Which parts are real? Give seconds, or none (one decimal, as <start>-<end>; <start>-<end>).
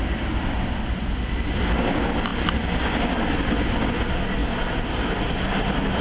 0.0-6.0